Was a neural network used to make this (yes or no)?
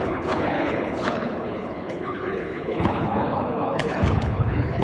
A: yes